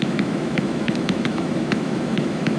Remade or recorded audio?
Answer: remade